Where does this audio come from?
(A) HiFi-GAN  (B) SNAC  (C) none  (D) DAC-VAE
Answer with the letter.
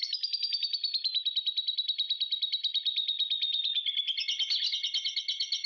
C